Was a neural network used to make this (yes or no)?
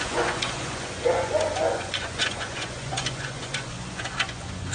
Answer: yes